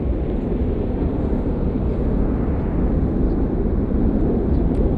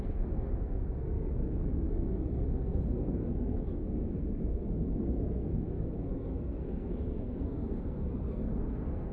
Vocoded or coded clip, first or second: second